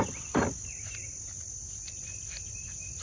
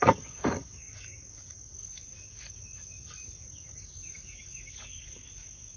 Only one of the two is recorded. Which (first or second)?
first